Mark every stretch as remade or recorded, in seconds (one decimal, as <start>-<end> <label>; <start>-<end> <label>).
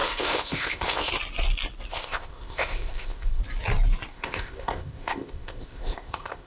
0.0-1.1 remade; 1.1-1.9 recorded; 1.9-3.4 remade; 3.4-4.1 recorded; 4.1-6.5 remade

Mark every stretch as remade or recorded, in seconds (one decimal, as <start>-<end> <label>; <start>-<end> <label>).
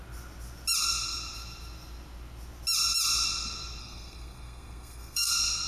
0.0-3.8 recorded; 3.8-5.3 remade; 5.3-5.7 recorded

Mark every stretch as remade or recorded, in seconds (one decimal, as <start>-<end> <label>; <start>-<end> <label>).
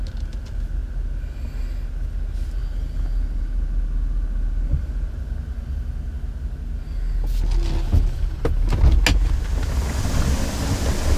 0.0-11.2 recorded